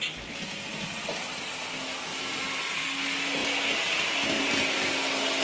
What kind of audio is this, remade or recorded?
recorded